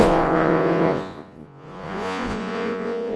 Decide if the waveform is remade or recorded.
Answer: remade